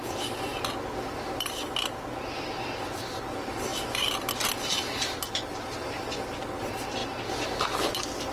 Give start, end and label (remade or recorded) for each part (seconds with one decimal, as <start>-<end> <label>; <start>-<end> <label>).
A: 0.0-8.3 recorded